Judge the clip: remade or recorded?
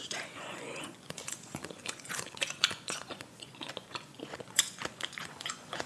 remade